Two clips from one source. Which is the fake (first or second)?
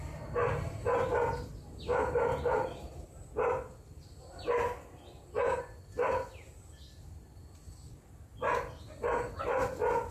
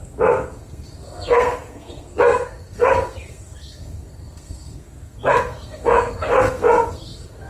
second